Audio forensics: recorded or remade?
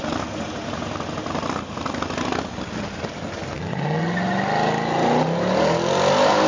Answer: recorded